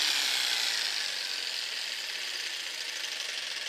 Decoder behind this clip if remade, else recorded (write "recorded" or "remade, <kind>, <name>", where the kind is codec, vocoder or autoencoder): recorded